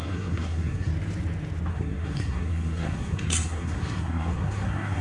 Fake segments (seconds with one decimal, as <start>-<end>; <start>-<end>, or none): 0.0-0.9; 1.7-5.0